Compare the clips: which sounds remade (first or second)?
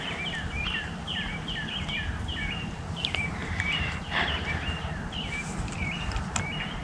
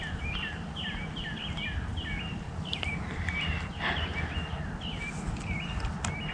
first